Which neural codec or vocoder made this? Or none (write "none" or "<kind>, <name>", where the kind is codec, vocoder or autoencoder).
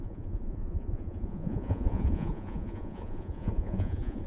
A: vocoder, Vocos